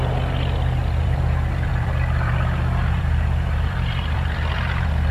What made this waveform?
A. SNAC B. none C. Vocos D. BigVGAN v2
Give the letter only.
D